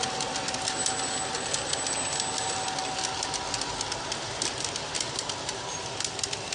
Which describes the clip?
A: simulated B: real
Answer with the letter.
B